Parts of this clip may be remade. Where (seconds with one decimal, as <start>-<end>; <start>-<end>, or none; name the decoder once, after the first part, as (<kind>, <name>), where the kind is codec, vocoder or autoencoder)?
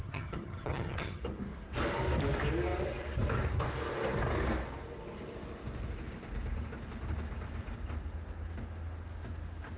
0.0-1.2 (vocoder, HiFi-GAN)